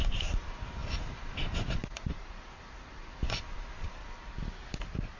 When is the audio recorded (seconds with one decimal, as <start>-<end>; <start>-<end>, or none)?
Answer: 0.8-1.6; 4.0-5.2